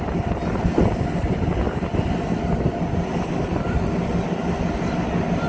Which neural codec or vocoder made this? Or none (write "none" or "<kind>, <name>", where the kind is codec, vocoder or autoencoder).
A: none